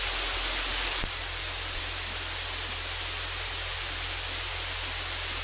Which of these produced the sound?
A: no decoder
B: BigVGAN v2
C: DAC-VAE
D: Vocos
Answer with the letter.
A